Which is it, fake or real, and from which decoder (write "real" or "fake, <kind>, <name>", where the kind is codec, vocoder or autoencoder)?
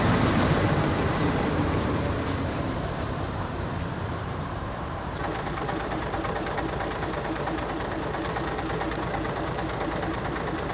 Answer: fake, vocoder, BigVGAN v2